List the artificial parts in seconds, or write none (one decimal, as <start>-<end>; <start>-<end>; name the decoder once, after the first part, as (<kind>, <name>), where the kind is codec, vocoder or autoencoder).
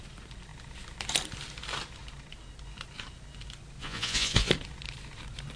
3.8-4.5 (vocoder, Vocos)